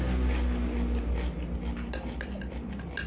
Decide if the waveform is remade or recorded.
recorded